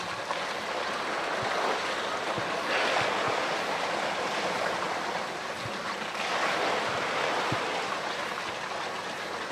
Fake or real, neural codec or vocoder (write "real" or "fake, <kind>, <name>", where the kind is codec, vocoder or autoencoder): real